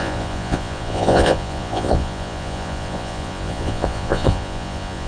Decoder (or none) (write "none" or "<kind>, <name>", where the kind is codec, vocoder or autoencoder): vocoder, Vocos